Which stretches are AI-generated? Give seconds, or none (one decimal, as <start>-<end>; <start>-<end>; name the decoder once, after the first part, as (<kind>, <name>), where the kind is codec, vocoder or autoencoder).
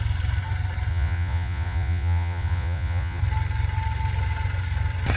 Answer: 0.9-3.2 (vocoder, Vocos)